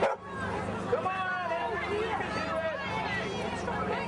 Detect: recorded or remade recorded